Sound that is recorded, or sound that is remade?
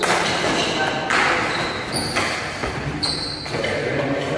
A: recorded